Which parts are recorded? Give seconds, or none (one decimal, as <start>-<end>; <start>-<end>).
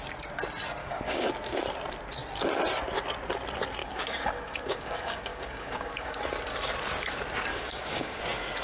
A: 0.0-0.8; 1.3-3.8; 6.2-7.5; 8.2-8.6